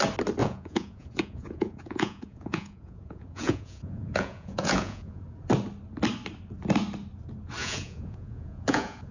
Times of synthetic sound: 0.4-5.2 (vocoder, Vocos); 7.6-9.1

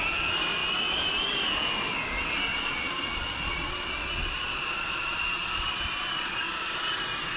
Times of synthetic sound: 2.5-6.9 (vocoder, Vocos)

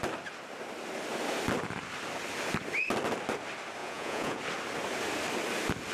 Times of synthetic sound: 3.8-4.4 (vocoder, Vocos)

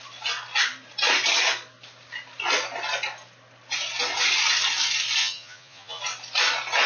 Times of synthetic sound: 5.2-6.0 (vocoder, Vocos)

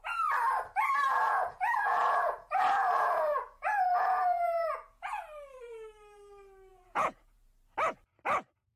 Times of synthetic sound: 0.8-5.2 (vocoder, Vocos); 6.7-7.5